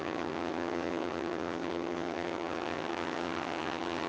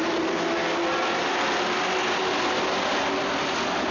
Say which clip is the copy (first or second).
first